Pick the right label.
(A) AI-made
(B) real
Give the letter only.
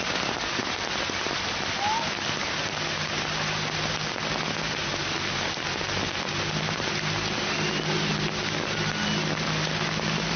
B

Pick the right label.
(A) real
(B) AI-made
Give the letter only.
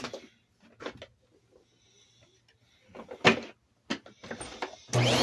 A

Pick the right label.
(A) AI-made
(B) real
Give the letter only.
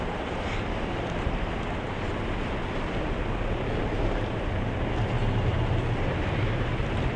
B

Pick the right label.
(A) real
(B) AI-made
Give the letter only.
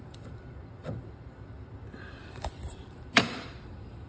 B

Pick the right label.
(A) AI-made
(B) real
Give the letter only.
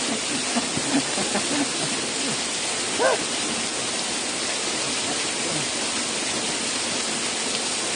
B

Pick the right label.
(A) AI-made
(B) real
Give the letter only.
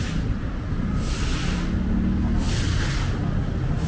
B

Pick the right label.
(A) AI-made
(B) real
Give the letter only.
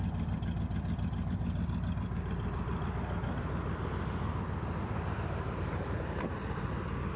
A